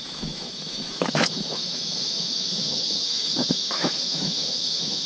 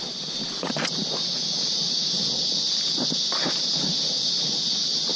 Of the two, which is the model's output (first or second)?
first